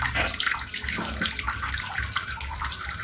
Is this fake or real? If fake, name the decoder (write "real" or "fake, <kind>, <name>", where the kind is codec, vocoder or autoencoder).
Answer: real